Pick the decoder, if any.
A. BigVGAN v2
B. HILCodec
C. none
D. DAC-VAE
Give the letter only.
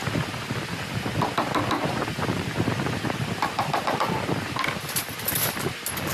C